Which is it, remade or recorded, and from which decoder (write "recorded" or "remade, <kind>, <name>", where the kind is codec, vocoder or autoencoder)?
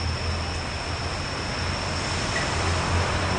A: recorded